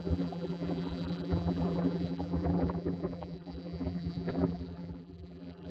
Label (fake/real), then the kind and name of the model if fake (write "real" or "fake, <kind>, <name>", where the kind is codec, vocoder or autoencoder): fake, vocoder, BigVGAN v2